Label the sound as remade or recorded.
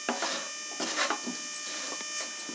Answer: recorded